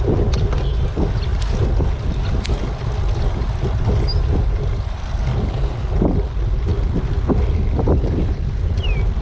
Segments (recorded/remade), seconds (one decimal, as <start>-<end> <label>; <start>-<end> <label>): 0.0-9.2 recorded